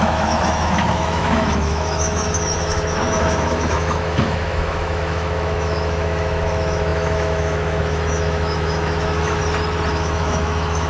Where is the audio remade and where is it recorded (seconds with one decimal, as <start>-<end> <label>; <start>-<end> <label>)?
0.0-9.4 remade; 9.4-9.9 recorded; 9.9-10.9 remade